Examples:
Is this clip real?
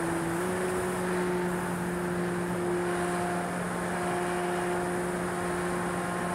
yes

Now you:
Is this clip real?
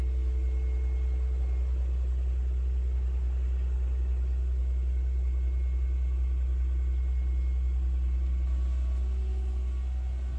yes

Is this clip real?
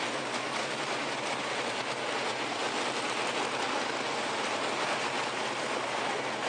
yes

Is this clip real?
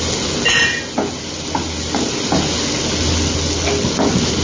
yes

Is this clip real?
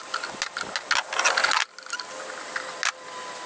yes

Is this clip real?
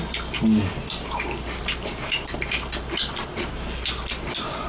yes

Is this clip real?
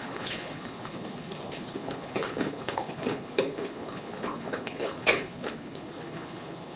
no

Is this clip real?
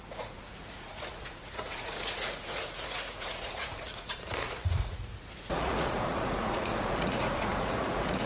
no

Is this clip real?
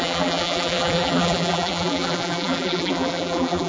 no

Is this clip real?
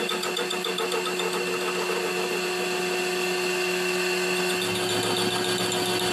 yes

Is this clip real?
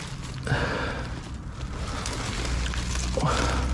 yes